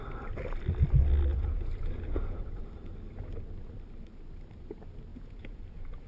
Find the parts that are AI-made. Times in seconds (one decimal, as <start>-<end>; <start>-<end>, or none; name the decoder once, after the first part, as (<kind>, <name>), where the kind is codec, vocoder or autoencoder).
1.3-2.6 (vocoder, Vocos); 5.1-6.1